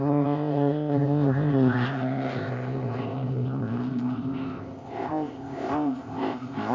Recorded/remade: remade